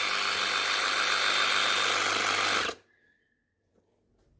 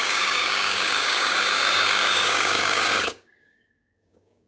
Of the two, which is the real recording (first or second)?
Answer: first